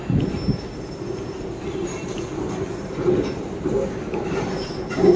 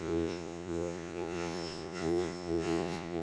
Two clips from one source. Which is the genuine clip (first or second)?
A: first